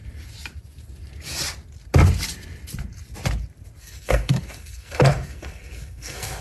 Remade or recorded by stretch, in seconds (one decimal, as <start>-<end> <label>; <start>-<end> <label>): 0.0-3.8 recorded; 3.8-6.4 remade

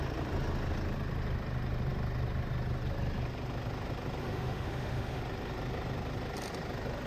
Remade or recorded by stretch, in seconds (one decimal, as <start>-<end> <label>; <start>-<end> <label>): 0.0-4.2 recorded; 4.2-5.2 remade; 5.2-7.1 recorded